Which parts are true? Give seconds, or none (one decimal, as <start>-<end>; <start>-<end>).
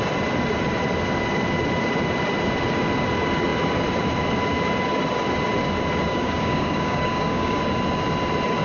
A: 0.0-6.1; 7.6-8.6